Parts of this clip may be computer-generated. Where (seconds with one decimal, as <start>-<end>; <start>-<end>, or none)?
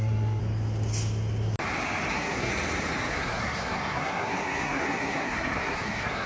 0.0-0.4; 2.1-2.5; 3.1-6.3